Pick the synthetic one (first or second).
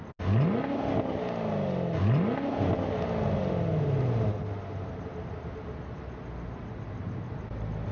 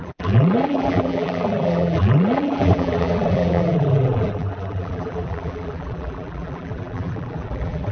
second